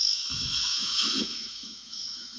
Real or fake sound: fake